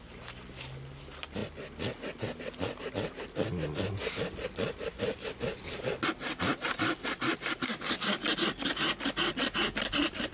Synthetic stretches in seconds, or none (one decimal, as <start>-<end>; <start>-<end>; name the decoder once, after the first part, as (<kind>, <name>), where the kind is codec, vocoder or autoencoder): none